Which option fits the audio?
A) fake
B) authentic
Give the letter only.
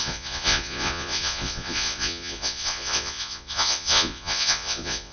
A